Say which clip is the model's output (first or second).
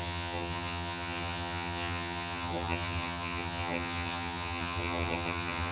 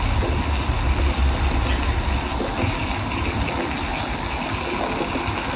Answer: first